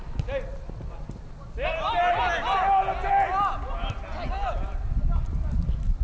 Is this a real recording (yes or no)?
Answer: yes